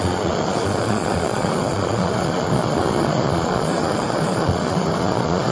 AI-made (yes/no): yes